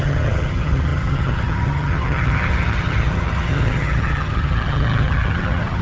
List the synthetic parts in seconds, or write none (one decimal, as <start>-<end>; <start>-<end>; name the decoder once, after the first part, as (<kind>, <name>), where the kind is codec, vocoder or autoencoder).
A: 0.0-5.8 (vocoder, HiFi-GAN)